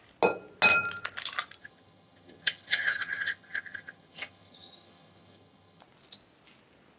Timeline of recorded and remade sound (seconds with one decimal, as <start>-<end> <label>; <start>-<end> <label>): 0.0-1.6 recorded; 1.6-5.8 remade; 5.8-7.0 recorded